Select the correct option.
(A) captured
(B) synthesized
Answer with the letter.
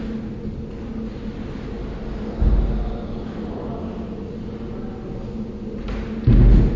A